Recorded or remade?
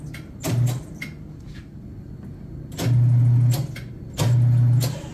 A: recorded